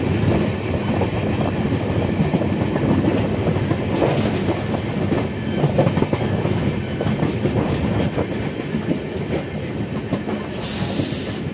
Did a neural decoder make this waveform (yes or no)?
no